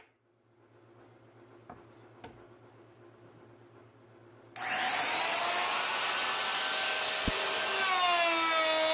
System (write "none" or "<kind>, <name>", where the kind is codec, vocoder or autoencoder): none